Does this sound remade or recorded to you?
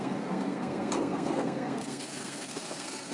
remade